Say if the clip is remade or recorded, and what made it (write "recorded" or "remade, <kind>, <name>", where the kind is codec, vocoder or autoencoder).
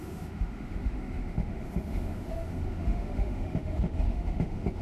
remade, autoencoder, DAC-VAE